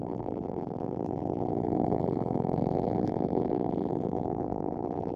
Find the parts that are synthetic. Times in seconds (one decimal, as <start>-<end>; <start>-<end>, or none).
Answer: 0.0-5.2